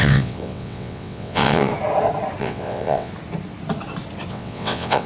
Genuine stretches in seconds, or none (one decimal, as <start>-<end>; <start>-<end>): 1.7-2.4; 3.1-4.3